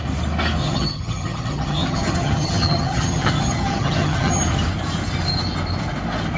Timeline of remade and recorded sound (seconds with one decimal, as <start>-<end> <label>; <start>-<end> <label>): 0.0-0.6 recorded; 0.6-4.4 remade; 4.4-6.4 recorded